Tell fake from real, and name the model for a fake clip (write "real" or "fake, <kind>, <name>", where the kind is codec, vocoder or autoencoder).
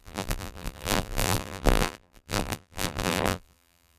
fake, vocoder, BigVGAN v2